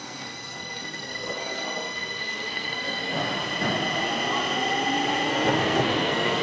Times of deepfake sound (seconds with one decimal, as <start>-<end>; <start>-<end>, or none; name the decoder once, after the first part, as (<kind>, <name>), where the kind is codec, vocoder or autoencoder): 0.0-3.0 (codec, SNAC); 5.3-6.4